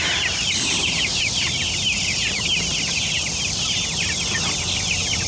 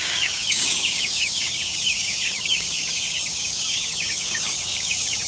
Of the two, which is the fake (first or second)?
second